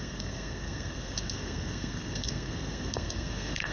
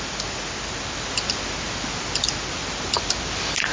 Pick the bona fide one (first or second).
second